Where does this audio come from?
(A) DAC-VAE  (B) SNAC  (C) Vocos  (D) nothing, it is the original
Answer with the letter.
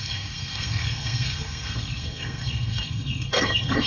B